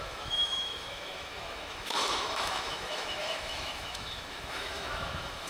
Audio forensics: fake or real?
fake